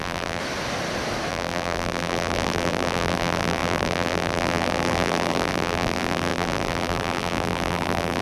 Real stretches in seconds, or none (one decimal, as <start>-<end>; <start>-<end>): 0.4-1.3